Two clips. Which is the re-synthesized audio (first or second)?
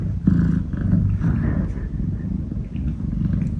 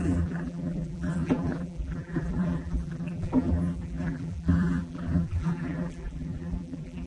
second